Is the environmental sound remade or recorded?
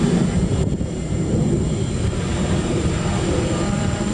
recorded